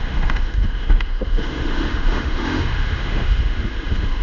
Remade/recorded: remade